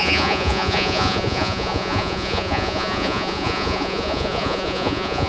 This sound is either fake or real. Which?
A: fake